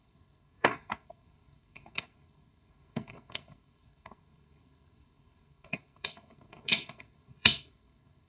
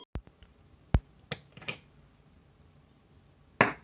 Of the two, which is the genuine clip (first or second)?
second